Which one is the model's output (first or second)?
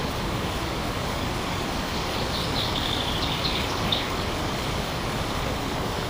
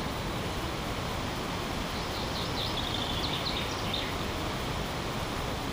first